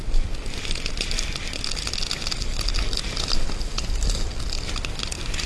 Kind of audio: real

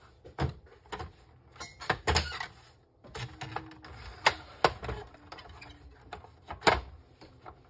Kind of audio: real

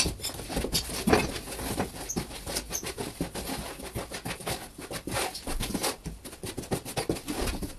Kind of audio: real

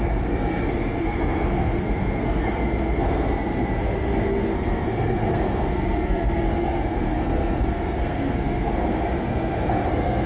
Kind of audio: fake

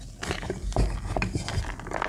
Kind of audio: real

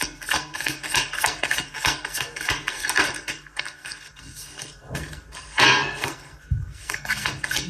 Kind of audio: fake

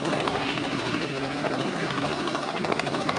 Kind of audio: fake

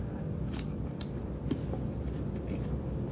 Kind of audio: real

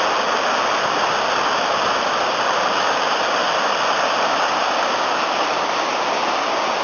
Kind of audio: real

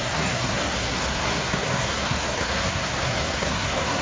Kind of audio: fake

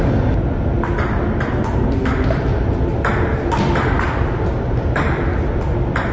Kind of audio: real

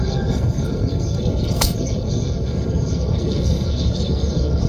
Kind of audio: fake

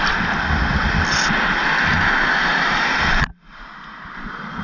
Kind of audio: real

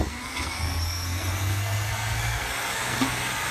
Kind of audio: fake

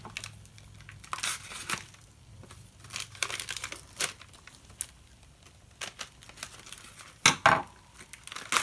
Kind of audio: real